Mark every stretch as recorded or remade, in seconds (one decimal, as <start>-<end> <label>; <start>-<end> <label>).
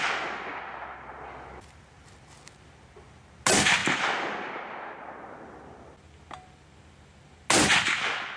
0.0-8.4 recorded